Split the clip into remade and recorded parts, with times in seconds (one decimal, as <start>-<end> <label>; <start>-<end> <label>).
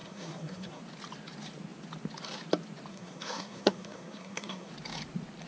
0.0-0.8 remade; 0.8-2.9 recorded; 2.9-4.7 remade; 4.7-5.5 recorded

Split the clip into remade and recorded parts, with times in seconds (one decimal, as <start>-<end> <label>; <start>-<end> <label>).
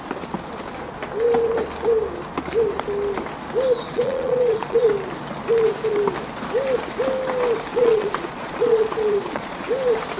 0.0-3.8 recorded; 3.8-4.9 remade; 4.9-7.7 recorded; 7.7-9.6 remade; 9.6-10.2 recorded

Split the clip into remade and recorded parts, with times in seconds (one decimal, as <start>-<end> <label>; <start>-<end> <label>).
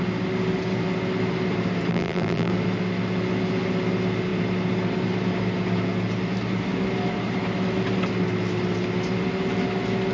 0.0-1.9 recorded; 1.9-2.5 remade; 2.5-10.1 recorded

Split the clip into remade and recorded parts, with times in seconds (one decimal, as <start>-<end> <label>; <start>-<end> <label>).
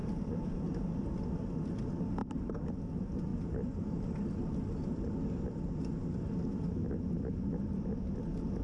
0.0-0.8 remade; 0.8-2.2 recorded; 2.2-2.9 remade; 2.9-3.3 recorded; 3.3-4.0 remade; 4.0-8.6 recorded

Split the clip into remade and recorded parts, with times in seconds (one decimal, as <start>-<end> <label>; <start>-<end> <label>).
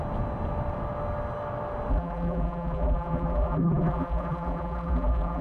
0.0-1.9 recorded; 1.9-5.4 remade